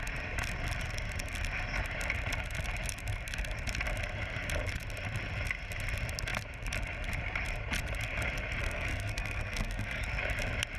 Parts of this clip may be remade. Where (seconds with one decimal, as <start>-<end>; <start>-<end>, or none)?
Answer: 8.6-10.0